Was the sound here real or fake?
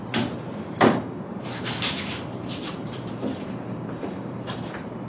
fake